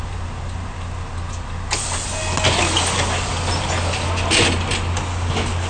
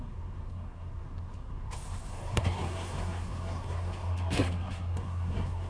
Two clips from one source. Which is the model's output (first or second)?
second